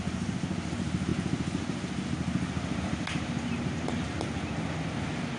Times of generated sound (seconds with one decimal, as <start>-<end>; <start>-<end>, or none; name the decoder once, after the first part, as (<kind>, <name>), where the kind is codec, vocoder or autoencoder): none

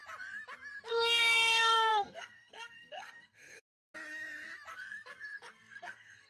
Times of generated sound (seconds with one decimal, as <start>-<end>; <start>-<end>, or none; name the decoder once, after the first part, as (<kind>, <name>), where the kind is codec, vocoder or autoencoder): 0.9-3.9 (codec, SNAC); 4.7-6.3

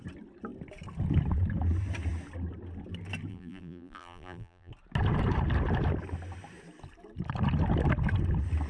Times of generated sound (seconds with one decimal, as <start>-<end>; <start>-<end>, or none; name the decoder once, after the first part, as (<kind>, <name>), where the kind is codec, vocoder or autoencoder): 3.3-4.7 (vocoder, BigVGAN v2)

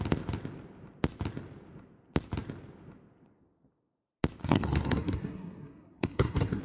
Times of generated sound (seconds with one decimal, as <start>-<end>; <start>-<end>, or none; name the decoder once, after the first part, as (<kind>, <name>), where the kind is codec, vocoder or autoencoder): 4.4-6.6 (codec, SNAC)